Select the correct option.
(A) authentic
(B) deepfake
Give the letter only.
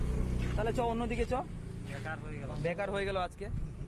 A